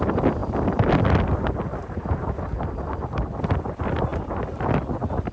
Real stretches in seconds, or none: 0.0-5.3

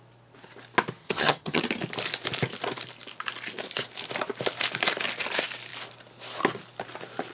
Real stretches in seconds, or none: 0.0-1.0; 1.6-7.3

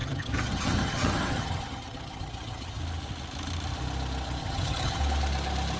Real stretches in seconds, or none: 2.8-4.4; 5.0-5.8

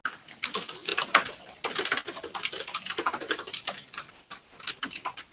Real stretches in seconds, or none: 0.0-5.3

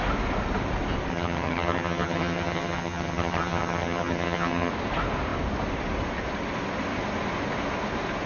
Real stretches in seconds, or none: 0.0-1.1; 4.7-8.3

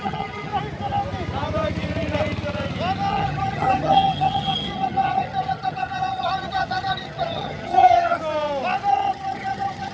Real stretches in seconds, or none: 0.5-3.1; 8.2-8.9